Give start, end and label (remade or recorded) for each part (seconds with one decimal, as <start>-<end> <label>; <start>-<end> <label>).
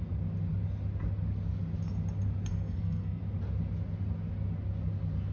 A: 0.0-2.5 recorded; 2.5-3.2 remade; 3.2-5.3 recorded